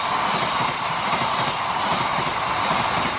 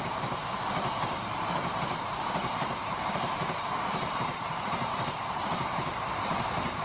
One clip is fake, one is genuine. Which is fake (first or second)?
second